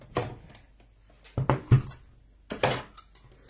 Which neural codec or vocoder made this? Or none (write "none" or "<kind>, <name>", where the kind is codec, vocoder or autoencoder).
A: none